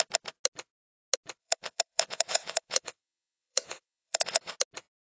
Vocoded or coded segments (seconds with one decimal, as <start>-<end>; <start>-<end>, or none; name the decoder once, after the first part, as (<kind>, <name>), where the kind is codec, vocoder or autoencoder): 1.4-4.5 (vocoder, WaveNeXt)